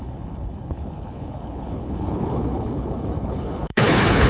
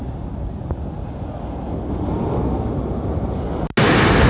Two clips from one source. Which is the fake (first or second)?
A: first